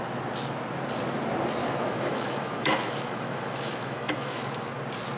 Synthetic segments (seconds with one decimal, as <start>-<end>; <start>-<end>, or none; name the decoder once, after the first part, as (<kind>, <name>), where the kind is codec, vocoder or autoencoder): 1.6-4.7 (autoencoder, DAC-VAE)